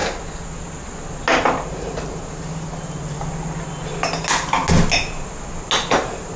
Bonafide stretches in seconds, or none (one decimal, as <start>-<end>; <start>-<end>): 0.0-6.4